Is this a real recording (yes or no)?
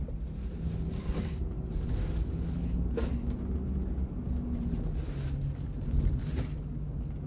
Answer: yes